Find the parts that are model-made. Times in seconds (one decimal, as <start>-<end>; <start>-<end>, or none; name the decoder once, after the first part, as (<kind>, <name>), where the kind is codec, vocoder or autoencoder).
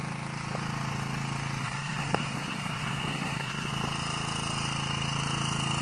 1.6-3.7 (codec, SNAC)